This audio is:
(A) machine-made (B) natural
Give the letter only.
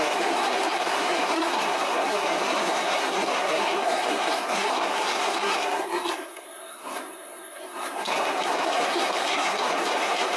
A